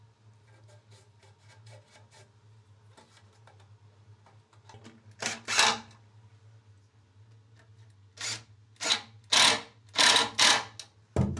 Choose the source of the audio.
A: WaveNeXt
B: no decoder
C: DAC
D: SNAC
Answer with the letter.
B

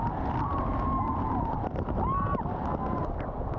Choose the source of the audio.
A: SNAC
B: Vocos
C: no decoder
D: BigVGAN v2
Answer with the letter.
C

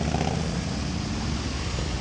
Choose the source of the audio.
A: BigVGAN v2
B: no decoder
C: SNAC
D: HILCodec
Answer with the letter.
B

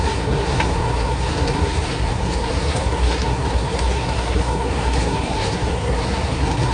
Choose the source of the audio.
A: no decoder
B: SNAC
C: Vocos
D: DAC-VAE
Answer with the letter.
B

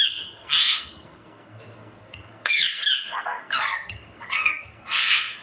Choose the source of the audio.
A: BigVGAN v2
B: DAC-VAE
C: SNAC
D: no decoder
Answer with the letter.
C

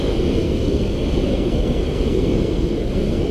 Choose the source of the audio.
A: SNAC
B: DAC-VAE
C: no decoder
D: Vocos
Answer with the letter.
A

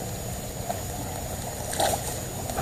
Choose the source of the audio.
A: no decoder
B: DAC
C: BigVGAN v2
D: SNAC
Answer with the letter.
A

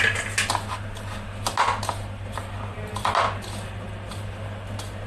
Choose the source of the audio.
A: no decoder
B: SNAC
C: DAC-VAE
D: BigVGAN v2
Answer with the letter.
A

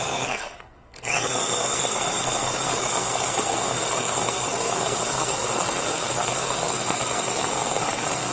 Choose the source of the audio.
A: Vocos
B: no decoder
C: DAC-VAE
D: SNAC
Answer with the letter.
D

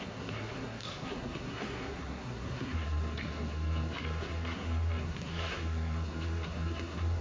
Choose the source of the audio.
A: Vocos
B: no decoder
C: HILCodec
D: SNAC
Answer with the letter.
D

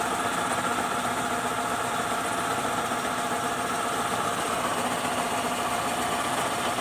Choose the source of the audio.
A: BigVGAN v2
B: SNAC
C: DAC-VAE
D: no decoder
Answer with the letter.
D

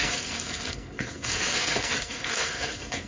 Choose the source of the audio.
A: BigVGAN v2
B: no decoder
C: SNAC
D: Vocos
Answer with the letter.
C